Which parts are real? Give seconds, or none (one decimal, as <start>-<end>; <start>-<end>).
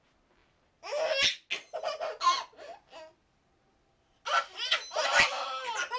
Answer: 0.0-6.0